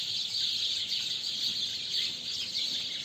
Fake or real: real